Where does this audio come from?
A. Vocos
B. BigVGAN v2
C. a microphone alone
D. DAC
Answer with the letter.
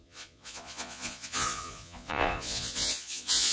A